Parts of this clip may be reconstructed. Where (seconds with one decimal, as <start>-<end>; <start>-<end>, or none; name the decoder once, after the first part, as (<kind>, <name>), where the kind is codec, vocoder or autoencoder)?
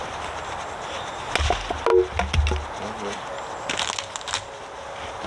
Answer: none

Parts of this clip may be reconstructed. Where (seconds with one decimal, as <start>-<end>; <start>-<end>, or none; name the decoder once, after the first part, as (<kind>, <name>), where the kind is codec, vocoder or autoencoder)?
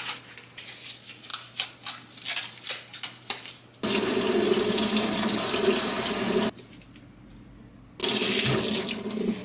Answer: none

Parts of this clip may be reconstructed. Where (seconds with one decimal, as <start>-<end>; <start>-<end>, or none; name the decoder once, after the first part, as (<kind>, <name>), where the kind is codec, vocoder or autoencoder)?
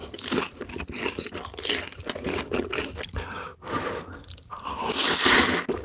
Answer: 0.0-0.6 (vocoder, BigVGAN v2); 3.5-4.7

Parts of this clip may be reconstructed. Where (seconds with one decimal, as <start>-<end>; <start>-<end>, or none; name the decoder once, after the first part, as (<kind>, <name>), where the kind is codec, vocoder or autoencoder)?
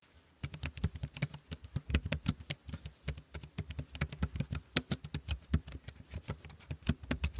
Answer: 0.0-2.6 (vocoder, BigVGAN v2); 4.9-7.4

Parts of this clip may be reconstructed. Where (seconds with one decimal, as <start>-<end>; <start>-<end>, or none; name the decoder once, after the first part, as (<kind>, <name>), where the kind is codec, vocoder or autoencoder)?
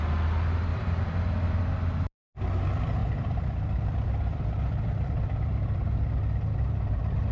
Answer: 0.7-1.6 (vocoder, BigVGAN v2); 3.0-6.1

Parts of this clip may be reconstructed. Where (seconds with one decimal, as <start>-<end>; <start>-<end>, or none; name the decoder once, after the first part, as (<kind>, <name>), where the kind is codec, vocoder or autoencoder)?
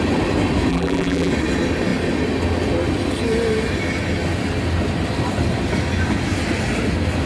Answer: 0.7-1.3 (vocoder, BigVGAN v2)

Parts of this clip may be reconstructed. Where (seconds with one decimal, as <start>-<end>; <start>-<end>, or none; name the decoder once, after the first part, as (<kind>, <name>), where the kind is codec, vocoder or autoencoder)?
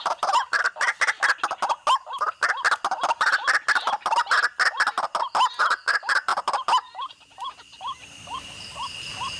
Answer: 0.0-0.9 (vocoder, BigVGAN v2); 5.6-9.4